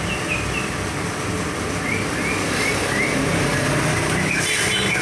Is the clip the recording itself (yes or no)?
yes